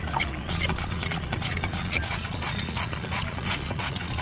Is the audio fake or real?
fake